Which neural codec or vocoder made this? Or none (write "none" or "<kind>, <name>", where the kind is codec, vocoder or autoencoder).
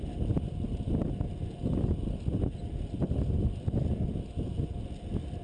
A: none